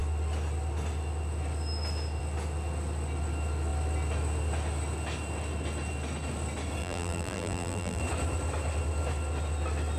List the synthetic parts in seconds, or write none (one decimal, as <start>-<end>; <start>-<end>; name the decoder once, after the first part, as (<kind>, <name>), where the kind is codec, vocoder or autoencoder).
6.8-8.0 (vocoder, BigVGAN v2)